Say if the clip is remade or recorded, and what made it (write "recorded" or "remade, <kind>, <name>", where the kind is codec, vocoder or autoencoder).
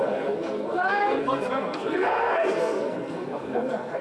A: remade, codec, SNAC